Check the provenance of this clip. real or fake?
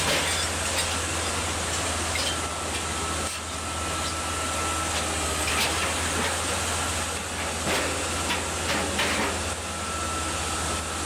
real